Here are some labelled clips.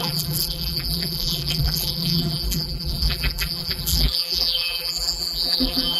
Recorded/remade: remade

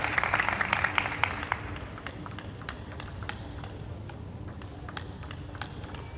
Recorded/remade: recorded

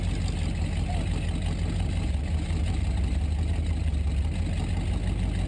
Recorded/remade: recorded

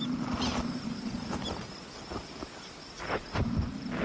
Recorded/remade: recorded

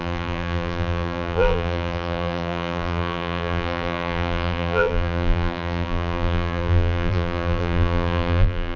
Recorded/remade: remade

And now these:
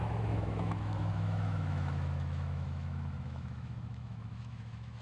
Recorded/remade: remade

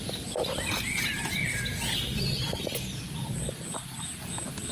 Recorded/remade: recorded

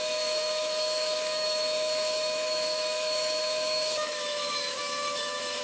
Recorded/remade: remade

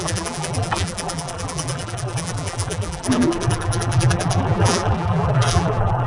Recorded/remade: remade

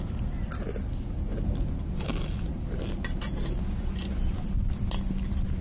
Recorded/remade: recorded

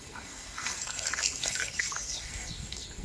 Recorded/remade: remade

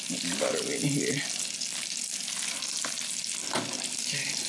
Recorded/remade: recorded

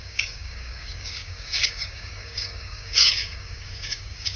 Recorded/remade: remade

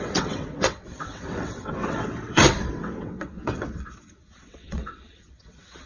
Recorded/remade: remade